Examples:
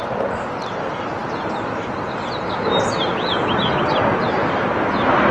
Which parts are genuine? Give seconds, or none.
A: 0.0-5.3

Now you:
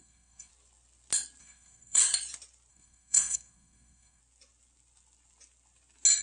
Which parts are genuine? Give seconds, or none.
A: 0.5-1.4; 2.0-2.7; 4.2-6.2

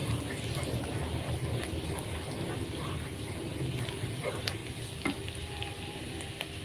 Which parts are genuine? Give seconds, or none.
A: 0.0-6.6

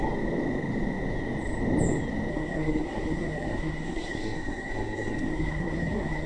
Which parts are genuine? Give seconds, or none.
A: 0.0-2.3

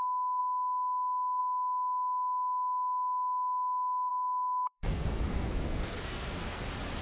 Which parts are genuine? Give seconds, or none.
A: 0.0-4.1; 6.6-7.0

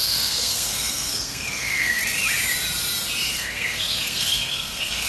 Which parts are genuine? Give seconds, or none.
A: 2.0-3.3